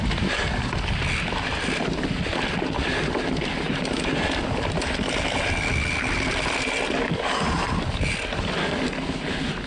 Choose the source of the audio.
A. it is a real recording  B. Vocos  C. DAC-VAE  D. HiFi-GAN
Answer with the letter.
A